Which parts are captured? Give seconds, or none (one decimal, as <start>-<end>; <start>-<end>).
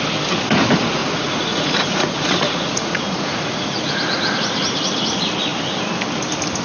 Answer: 0.0-1.0; 4.0-6.6